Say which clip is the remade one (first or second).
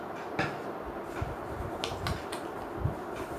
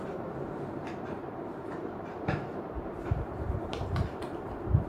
second